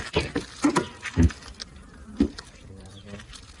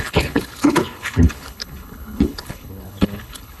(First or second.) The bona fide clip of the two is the first